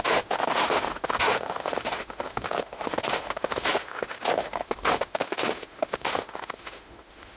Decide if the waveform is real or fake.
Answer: fake